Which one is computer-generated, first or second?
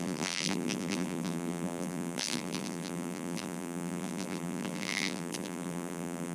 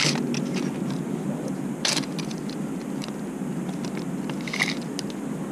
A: first